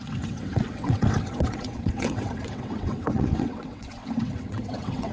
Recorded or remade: remade